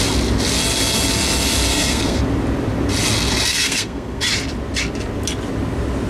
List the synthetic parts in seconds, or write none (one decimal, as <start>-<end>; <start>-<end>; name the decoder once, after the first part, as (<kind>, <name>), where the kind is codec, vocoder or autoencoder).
1.7-2.2 (codec, SNAC); 3.5-4.2